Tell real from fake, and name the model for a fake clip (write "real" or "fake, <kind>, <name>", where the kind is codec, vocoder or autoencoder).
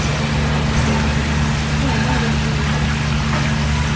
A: real